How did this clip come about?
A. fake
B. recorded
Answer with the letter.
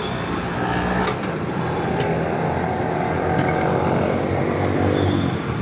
B